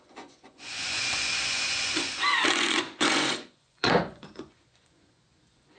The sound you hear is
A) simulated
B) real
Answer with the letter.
A